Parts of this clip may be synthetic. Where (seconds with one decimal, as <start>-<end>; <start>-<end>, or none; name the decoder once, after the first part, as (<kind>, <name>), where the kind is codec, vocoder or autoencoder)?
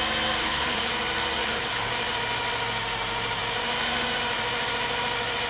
0.4-0.9 (codec, HILCodec); 1.4-1.9